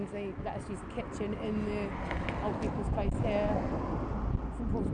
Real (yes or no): yes